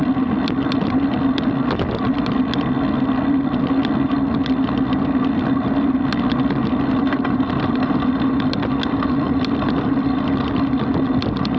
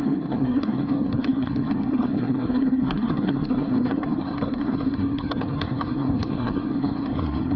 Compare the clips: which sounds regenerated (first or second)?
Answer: second